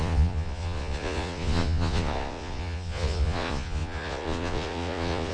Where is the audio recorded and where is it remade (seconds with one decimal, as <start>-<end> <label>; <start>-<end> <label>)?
0.0-5.3 remade